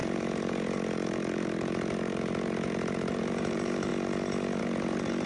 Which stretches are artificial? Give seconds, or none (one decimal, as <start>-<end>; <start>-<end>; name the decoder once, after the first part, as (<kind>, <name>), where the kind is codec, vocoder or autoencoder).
0.0-3.9 (vocoder, BigVGAN v2); 4.6-5.3